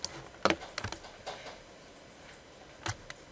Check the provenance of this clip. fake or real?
real